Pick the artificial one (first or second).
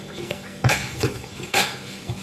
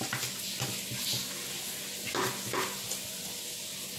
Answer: first